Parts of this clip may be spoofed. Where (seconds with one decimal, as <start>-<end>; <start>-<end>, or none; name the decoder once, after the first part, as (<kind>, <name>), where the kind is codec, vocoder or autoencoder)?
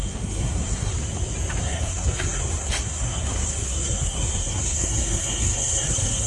0.0-0.9 (codec, SNAC); 1.6-6.3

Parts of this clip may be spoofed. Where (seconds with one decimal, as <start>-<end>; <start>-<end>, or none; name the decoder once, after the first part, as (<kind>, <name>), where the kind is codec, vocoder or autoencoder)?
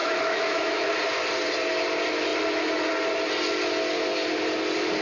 0.0-0.9 (autoencoder, DAC-VAE)